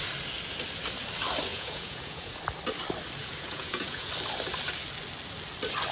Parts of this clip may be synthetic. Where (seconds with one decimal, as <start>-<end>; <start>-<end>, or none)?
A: 1.5-2.4; 3.2-4.1

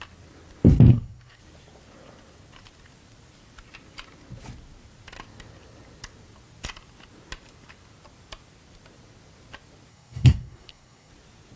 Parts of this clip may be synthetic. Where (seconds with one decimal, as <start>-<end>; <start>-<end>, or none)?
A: 0.9-1.4; 9.9-11.1